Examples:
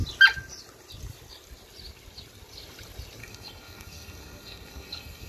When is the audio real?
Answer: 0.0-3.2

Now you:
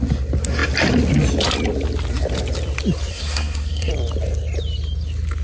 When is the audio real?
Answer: 0.0-3.1; 3.9-5.4

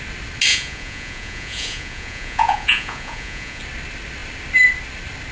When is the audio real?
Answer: 0.0-0.5; 3.6-5.3